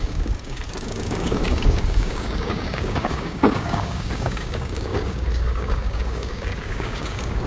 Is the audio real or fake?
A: fake